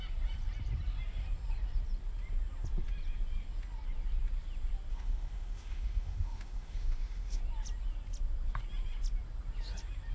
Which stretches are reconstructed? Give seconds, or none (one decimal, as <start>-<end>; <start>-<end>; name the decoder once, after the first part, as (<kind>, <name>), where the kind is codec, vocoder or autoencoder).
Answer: 4.9-7.4 (autoencoder, DAC-VAE)